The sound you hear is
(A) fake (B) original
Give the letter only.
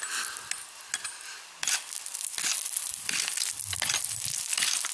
B